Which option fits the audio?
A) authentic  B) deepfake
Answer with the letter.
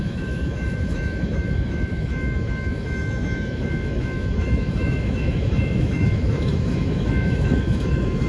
B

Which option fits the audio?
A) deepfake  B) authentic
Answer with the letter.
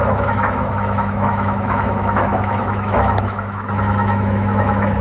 A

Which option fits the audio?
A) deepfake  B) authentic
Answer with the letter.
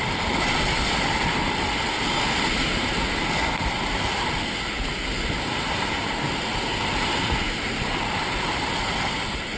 B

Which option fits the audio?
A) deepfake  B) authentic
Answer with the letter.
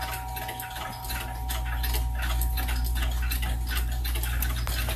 B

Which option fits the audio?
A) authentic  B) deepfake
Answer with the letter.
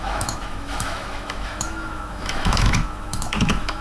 B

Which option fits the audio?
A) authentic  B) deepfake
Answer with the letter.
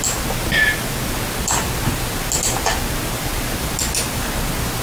A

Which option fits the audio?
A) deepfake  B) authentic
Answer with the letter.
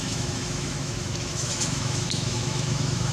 A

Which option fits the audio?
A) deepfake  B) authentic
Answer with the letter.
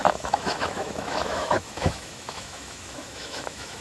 A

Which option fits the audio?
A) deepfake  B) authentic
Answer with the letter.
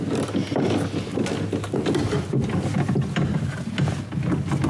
B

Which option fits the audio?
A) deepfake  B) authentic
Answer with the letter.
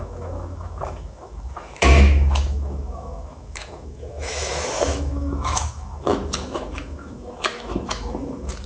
A